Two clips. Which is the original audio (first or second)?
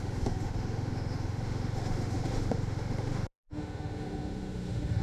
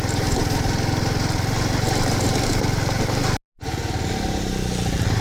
second